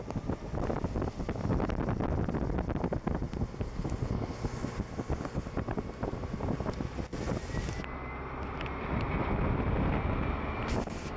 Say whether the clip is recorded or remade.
recorded